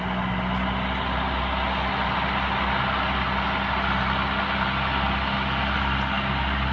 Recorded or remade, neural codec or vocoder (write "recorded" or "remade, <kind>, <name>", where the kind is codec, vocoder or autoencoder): recorded